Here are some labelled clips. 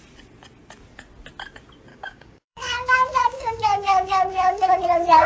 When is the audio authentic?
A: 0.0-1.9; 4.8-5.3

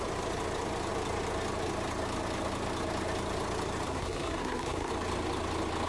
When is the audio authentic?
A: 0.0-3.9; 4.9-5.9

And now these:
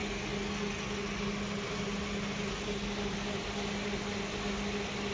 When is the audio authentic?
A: 0.0-5.1